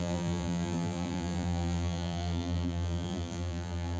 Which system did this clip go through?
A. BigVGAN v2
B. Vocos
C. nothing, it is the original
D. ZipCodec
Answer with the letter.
A